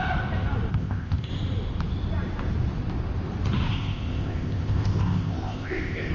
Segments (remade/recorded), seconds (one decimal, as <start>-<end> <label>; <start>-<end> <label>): 0.0-0.7 recorded; 0.7-1.3 remade; 1.3-3.7 recorded; 3.7-6.1 remade